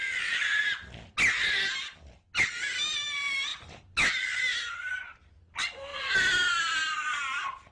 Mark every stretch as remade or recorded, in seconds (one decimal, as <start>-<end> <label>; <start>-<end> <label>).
0.0-7.7 recorded